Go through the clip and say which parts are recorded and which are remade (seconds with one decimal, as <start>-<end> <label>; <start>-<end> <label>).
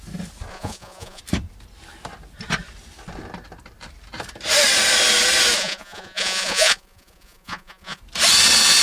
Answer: 0.0-0.5 recorded; 0.5-1.2 remade; 1.2-5.6 recorded; 5.6-8.0 remade; 8.0-8.8 recorded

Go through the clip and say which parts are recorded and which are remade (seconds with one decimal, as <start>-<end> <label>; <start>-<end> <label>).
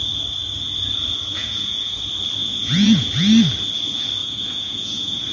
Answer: 0.0-1.3 recorded; 1.3-2.0 remade; 2.0-2.4 recorded; 2.4-3.1 remade; 3.1-4.2 recorded; 4.2-5.3 remade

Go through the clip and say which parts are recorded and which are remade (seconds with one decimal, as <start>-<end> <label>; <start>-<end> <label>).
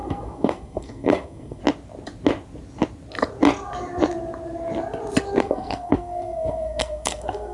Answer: 0.0-1.6 remade; 1.6-5.4 recorded; 5.4-7.5 remade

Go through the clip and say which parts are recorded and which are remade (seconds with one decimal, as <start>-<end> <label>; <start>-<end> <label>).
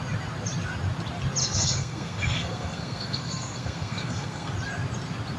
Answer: 0.0-1.4 recorded; 1.4-4.5 remade; 4.5-5.4 recorded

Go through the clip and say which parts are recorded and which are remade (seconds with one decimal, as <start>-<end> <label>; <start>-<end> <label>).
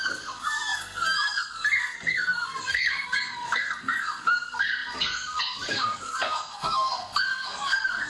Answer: 0.0-8.1 remade